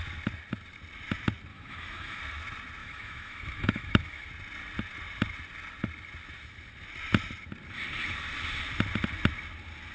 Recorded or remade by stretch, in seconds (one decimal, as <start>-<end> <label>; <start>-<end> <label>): 0.0-1.5 recorded; 1.5-2.2 remade; 2.2-2.8 recorded; 2.8-4.3 remade; 4.3-9.9 recorded